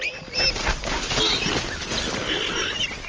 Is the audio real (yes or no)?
yes